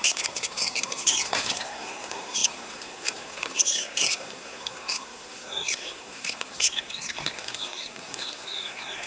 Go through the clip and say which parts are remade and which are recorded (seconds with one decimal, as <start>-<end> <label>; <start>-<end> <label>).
0.0-9.1 remade